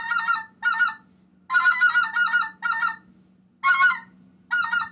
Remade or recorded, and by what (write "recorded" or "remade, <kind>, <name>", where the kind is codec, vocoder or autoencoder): recorded